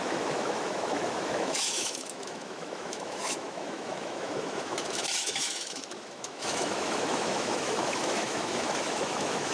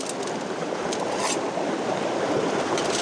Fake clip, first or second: first